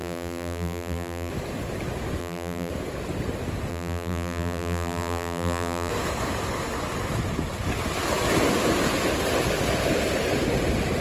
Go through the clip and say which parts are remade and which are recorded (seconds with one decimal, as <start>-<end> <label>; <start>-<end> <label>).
0.0-1.3 remade; 1.3-2.2 recorded; 2.2-2.7 remade; 2.7-3.7 recorded; 3.7-5.9 remade; 5.9-11.0 recorded